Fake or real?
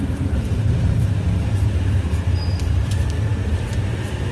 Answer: fake